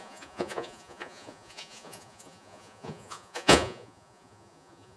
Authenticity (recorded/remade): remade